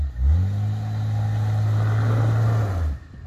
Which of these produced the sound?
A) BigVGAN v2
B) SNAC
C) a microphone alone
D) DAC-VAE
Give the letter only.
C